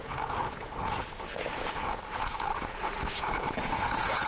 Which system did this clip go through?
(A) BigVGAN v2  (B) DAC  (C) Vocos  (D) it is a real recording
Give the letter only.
C